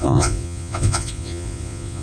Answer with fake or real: fake